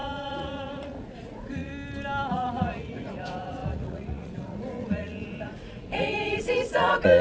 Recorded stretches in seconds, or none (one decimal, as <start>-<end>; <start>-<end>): 1.7-2.3